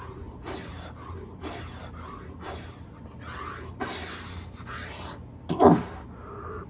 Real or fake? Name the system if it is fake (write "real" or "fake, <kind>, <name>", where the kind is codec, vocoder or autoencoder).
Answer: real